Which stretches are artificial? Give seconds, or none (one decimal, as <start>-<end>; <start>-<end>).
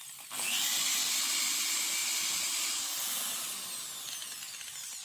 2.0-3.5